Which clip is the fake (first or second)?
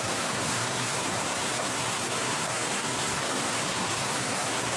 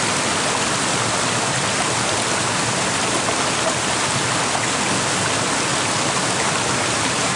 first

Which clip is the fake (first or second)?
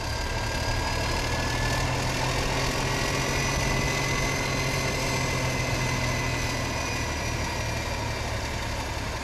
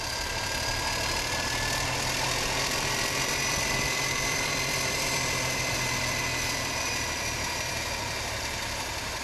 second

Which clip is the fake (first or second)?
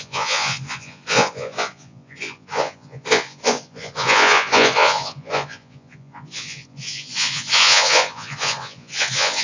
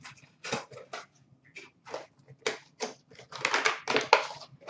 first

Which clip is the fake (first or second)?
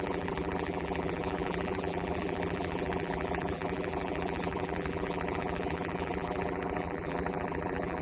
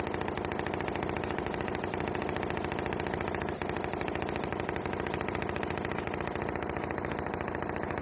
first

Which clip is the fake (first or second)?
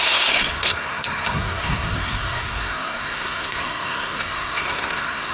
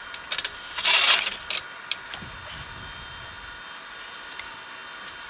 first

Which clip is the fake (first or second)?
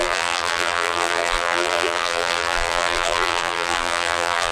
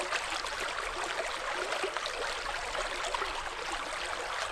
first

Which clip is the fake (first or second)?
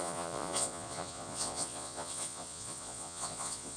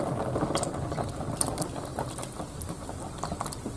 first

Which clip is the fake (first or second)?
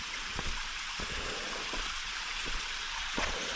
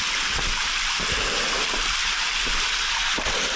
first